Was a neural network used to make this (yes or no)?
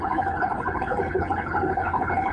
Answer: yes